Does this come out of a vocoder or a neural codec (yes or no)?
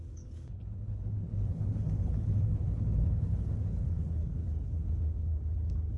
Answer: yes